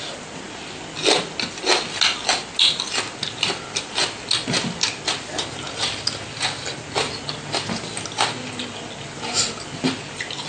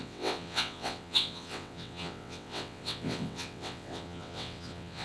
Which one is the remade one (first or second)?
second